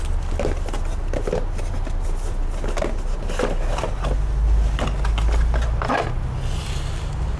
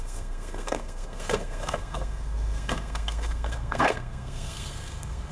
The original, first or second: first